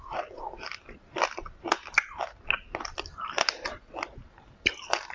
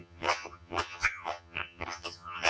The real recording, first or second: first